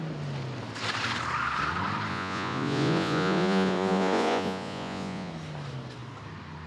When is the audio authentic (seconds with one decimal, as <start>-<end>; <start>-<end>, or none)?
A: 0.0-2.1; 5.3-6.7